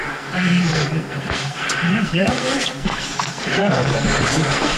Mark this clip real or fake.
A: fake